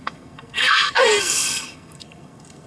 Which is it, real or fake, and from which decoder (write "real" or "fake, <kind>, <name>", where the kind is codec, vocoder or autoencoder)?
fake, codec, SNAC